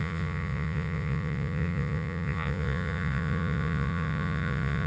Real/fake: fake